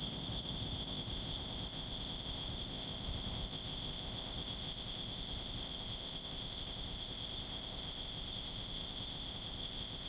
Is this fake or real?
fake